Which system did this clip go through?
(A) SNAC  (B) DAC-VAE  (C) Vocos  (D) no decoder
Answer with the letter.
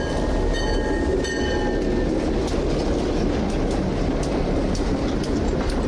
D